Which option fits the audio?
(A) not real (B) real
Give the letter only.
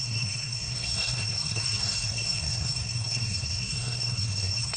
A